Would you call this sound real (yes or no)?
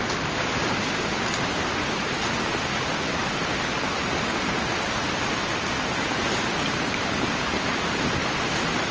yes